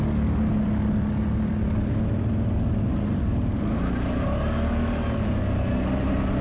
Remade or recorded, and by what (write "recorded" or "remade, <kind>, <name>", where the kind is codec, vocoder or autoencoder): recorded